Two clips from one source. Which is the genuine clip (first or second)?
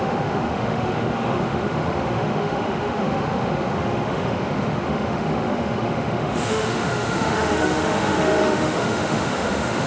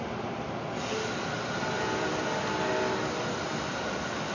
second